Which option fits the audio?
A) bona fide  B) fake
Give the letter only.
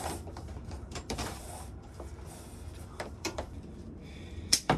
B